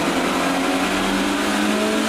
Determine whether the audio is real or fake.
real